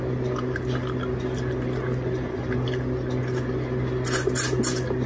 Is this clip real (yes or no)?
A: yes